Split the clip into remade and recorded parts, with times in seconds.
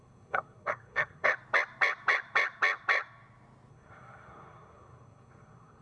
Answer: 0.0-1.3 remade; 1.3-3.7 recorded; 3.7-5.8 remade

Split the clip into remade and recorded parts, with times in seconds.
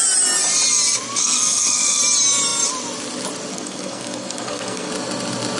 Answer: 0.0-1.2 recorded; 1.2-2.0 remade; 2.0-3.5 recorded; 3.5-4.9 remade; 4.9-5.6 recorded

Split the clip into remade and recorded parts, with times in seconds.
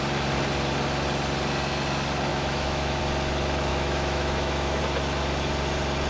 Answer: 0.0-2.3 recorded; 2.3-3.0 remade; 3.0-3.7 recorded; 3.7-4.8 remade; 4.8-6.1 recorded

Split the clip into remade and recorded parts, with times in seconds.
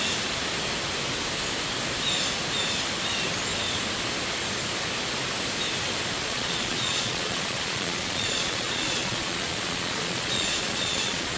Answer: 0.0-6.2 recorded; 6.2-11.4 remade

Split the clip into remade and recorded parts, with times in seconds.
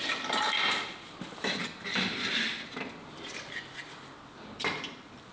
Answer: 0.0-5.3 recorded